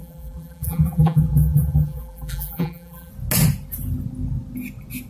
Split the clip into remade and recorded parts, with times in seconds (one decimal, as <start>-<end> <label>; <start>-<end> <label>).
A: 0.0-3.1 remade; 3.1-5.1 recorded